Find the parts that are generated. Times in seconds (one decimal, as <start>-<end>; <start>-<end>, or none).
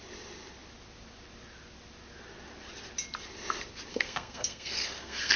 3.9-5.4